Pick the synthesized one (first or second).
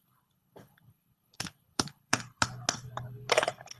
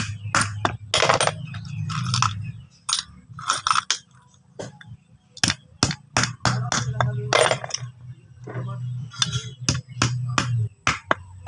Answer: first